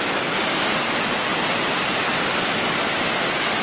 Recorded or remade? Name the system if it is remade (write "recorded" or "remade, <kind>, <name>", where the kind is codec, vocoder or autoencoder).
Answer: recorded